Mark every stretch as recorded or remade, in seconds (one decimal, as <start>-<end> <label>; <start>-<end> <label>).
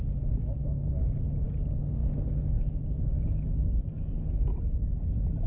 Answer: 0.0-5.5 recorded